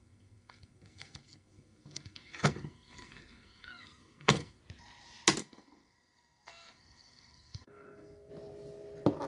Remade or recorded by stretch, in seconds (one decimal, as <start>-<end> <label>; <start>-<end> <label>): 0.0-4.6 remade; 4.6-5.4 recorded; 5.4-8.3 remade; 8.3-9.3 recorded